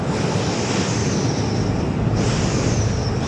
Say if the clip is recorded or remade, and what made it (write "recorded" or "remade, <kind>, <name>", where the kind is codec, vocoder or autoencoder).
recorded